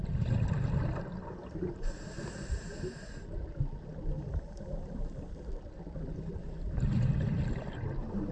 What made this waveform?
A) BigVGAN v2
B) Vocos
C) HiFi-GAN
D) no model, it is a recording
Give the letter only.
D